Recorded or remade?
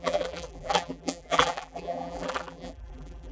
remade